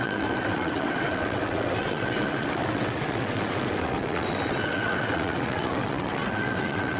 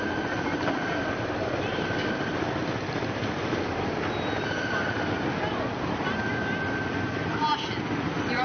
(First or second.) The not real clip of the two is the first